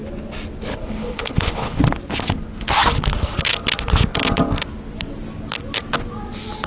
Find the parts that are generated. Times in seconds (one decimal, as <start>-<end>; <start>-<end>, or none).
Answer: 0.7-1.8